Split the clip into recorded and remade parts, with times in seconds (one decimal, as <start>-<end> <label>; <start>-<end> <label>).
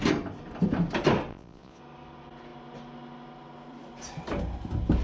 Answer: 0.0-1.3 recorded; 1.3-1.8 remade; 1.8-5.0 recorded